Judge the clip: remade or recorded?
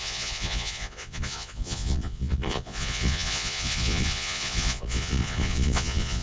remade